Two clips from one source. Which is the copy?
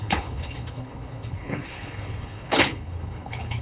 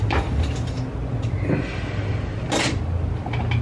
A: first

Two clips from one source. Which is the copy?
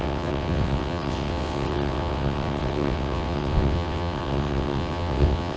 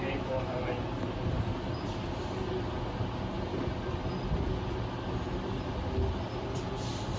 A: first